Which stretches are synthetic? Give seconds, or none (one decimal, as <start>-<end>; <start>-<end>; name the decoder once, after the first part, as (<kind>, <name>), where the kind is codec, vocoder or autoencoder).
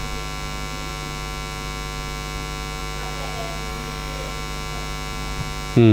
3.7-4.3 (autoencoder, DAC-VAE)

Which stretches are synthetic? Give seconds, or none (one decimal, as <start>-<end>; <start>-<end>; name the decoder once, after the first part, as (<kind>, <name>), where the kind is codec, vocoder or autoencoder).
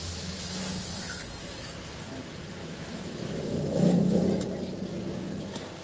0.0-0.6 (autoencoder, DAC-VAE); 2.6-4.2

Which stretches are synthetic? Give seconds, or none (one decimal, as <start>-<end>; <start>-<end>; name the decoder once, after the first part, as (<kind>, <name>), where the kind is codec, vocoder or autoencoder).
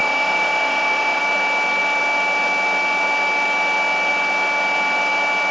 0.0-1.2 (autoencoder, DAC-VAE)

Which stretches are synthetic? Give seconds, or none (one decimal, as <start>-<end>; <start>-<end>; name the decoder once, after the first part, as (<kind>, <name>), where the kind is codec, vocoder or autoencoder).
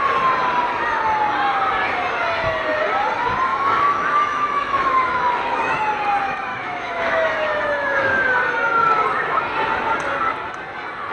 3.5-5.8 (autoencoder, DAC-VAE); 6.5-8.3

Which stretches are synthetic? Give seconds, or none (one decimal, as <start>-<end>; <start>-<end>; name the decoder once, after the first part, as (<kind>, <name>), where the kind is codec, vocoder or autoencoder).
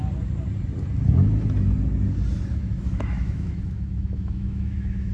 2.5-5.1 (autoencoder, DAC-VAE)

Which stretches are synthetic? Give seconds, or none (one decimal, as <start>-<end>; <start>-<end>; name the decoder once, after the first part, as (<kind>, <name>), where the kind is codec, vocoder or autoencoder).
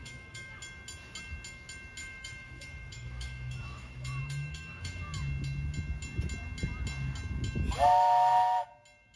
0.0-0.6 (autoencoder, DAC-VAE); 2.0-5.0